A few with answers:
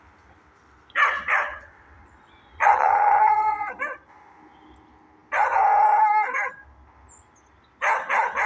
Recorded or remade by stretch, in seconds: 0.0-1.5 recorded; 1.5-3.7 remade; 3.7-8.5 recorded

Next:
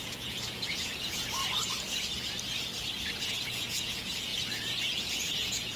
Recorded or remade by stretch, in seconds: 0.0-1.4 remade; 1.4-3.2 recorded; 3.2-5.8 remade

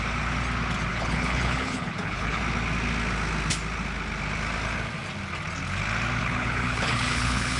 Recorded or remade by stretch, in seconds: 0.0-0.9 recorded; 0.9-2.4 remade; 2.4-6.2 recorded; 6.2-7.6 remade

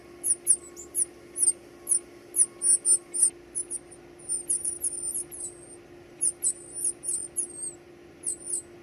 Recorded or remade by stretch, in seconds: 0.0-8.8 recorded

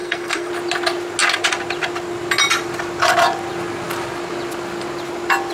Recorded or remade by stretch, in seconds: 0.0-0.5 remade; 0.5-5.5 recorded

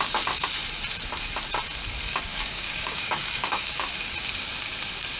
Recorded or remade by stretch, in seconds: 0.0-2.3 recorded; 2.3-3.9 remade; 3.9-5.2 recorded

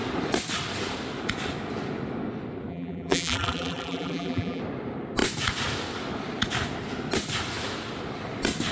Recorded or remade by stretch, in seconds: 0.0-2.7 recorded; 2.7-4.6 remade; 4.6-8.7 recorded